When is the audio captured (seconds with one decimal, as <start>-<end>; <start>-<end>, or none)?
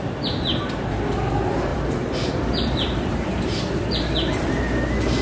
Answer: 0.0-1.7; 4.5-5.2